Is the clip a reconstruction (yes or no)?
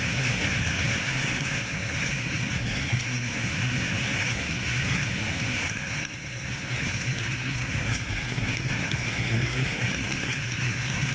yes